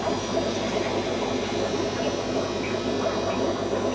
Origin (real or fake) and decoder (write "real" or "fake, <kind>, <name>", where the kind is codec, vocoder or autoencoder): real